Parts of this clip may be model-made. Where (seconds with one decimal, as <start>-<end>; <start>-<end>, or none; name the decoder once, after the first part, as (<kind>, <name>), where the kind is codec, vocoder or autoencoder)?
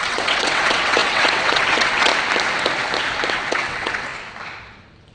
0.0-2.1 (vocoder, WaveNeXt); 3.3-4.1